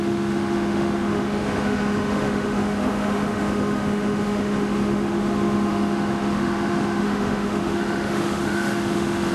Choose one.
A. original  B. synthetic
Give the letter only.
B